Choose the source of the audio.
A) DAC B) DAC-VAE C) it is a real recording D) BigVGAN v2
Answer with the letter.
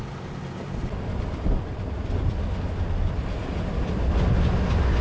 C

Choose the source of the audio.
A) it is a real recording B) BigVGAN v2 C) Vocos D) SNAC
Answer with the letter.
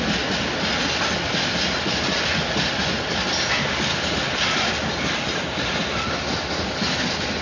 A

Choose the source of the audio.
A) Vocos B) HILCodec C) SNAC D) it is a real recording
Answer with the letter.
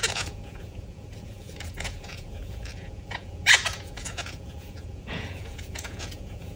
A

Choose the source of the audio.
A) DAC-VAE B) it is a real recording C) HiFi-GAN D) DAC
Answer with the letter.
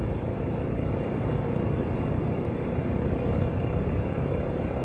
D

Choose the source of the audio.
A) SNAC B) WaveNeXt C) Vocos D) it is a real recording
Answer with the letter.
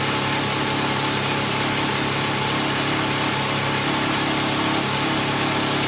D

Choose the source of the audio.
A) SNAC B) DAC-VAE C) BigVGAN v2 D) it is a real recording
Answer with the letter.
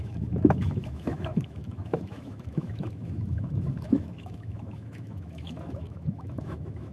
B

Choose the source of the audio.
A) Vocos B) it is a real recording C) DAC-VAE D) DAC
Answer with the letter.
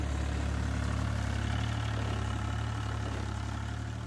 B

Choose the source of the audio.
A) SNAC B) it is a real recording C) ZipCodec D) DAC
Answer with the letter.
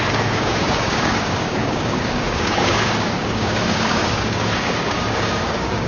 D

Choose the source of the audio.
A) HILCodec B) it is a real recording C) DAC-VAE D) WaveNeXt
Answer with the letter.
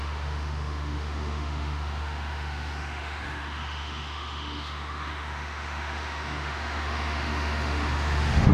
C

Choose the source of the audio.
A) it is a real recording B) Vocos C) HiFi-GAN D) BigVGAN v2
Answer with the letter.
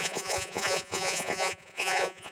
B